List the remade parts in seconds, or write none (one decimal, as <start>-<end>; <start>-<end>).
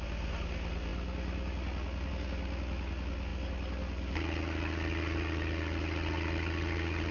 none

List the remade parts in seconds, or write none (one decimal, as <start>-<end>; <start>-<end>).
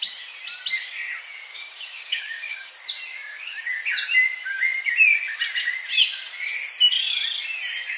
1.5-2.7; 3.1-3.8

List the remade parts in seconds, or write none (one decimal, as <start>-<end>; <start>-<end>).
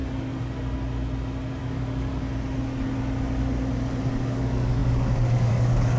1.6-2.1; 4.0-6.0